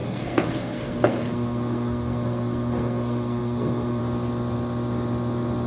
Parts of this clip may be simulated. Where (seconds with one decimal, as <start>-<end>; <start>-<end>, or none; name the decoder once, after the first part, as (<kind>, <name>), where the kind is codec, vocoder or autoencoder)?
0.0-4.0 (codec, SNAC)